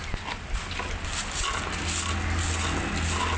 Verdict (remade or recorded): recorded